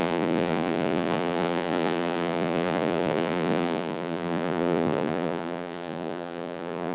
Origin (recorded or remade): remade